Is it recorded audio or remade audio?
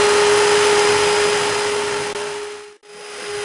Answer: recorded